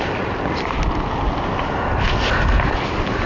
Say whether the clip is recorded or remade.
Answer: recorded